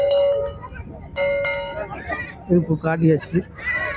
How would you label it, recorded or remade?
recorded